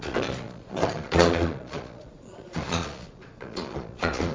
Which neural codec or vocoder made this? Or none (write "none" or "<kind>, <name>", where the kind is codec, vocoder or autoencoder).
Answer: vocoder, Vocos